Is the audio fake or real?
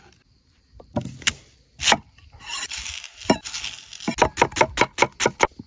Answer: real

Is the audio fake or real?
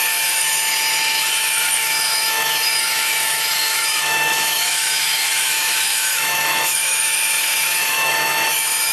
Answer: fake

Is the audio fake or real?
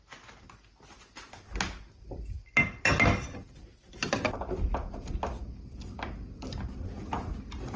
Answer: real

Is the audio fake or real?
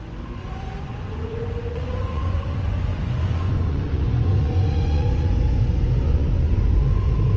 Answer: fake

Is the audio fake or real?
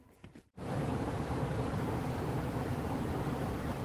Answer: fake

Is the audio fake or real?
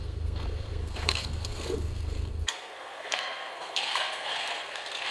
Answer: fake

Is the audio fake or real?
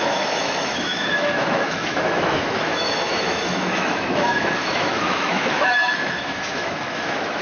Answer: fake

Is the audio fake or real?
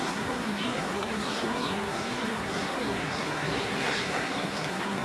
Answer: fake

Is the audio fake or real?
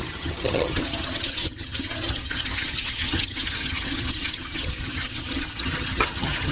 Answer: fake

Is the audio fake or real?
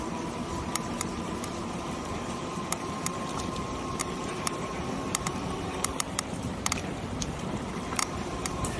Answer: fake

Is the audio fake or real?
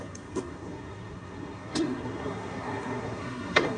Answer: fake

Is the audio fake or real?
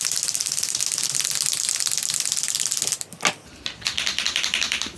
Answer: real